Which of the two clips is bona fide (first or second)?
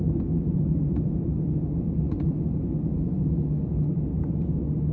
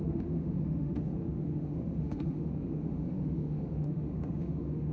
first